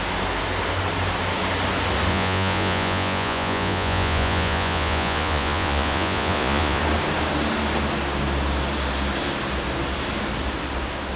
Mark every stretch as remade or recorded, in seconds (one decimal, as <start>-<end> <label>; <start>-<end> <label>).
0.0-2.1 recorded; 2.1-6.8 remade; 6.8-11.2 recorded